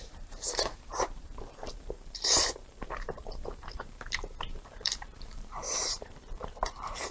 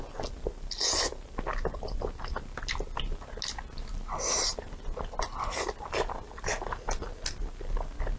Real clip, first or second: second